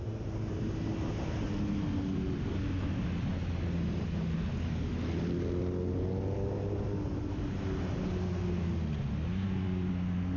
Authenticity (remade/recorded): recorded